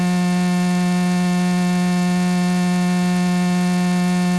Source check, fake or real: real